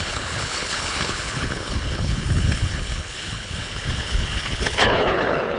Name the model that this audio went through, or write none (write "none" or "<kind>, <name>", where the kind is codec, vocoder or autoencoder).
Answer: codec, HILCodec